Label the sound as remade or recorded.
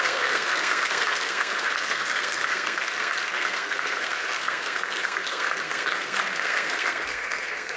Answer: remade